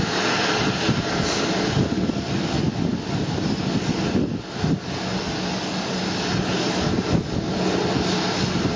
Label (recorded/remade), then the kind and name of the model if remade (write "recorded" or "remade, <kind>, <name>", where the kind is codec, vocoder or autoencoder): recorded